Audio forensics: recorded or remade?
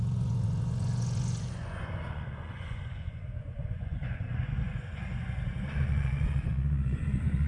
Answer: remade